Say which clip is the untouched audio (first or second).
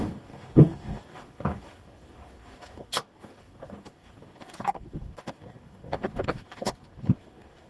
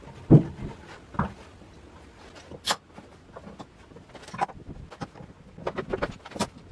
second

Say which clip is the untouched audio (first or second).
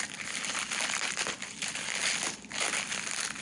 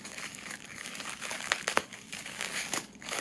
first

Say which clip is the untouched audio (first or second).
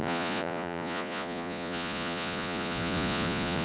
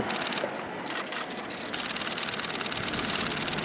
second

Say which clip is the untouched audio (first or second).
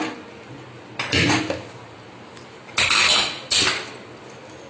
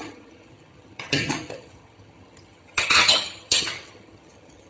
first